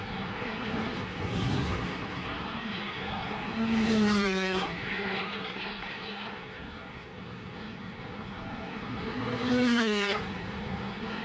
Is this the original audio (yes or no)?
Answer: no